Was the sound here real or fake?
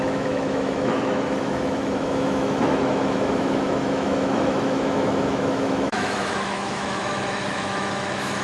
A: fake